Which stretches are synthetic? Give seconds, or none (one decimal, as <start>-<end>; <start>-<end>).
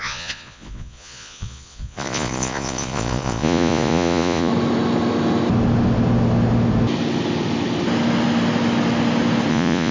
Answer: 0.0-4.5; 9.5-9.9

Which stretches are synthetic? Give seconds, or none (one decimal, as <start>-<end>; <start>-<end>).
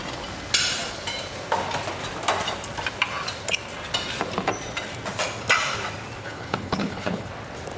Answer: 6.2-7.3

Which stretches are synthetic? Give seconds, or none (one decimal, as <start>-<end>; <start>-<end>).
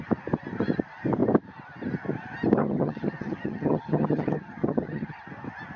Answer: 2.6-5.2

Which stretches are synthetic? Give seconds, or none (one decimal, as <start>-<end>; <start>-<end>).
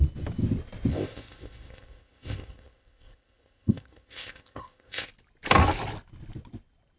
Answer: 0.9-5.1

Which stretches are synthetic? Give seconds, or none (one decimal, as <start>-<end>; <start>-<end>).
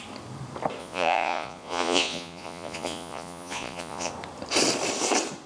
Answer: 0.8-4.1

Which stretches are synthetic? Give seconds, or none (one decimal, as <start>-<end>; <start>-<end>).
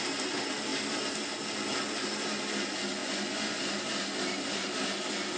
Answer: 3.0-3.6